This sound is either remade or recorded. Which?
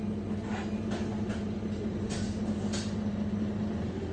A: recorded